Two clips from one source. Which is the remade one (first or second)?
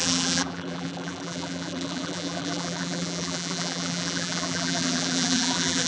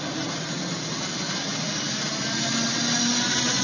first